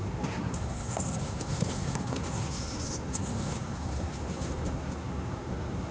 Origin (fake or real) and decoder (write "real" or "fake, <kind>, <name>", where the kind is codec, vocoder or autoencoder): fake, codec, SNAC